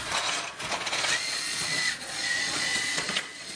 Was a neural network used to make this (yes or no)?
yes